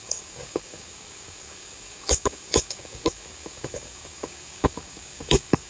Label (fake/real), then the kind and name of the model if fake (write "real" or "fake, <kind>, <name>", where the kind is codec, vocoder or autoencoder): fake, codec, DAC